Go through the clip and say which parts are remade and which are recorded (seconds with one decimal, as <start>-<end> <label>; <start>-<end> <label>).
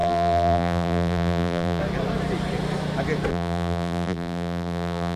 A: 0.0-1.8 remade; 1.8-3.3 recorded; 3.3-5.2 remade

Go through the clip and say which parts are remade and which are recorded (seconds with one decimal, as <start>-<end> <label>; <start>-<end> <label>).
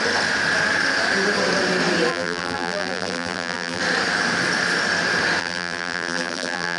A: 0.0-2.1 recorded; 2.1-3.8 remade; 3.8-5.4 recorded; 5.4-6.8 remade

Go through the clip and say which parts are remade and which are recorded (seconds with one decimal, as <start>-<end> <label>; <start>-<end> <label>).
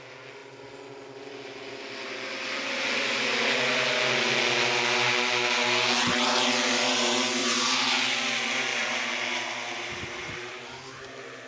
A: 0.0-7.4 recorded; 7.4-8.0 remade; 8.0-8.7 recorded; 8.7-10.6 remade; 10.6-11.5 recorded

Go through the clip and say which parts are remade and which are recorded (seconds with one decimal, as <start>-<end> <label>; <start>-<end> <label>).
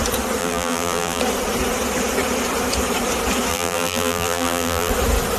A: 0.0-0.4 recorded; 0.4-1.2 remade; 1.2-3.5 recorded; 3.5-4.9 remade; 4.9-5.4 recorded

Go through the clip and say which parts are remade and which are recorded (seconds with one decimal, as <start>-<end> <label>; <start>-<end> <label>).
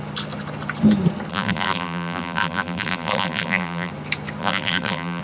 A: 0.0-1.3 recorded; 1.3-3.9 remade; 3.9-4.4 recorded; 4.4-5.2 remade